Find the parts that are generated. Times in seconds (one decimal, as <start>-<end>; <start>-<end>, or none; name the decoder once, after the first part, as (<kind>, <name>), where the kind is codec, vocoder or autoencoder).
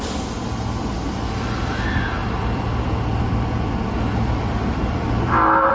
2.2-5.7 (vocoder, BigVGAN v2)